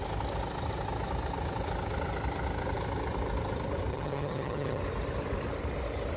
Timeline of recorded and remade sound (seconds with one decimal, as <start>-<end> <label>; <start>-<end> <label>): 0.0-3.9 recorded; 3.9-4.8 remade; 4.8-6.2 recorded